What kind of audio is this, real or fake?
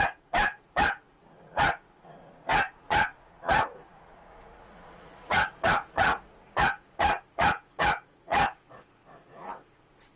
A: fake